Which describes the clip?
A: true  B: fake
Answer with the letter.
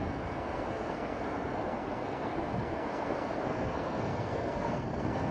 B